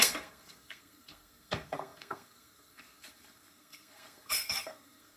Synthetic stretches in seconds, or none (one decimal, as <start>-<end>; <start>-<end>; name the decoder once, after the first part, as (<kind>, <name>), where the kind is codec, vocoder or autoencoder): 0.0-5.2 (codec, SNAC)